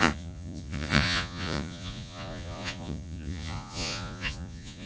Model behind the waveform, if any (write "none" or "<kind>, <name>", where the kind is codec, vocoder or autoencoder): vocoder, Vocos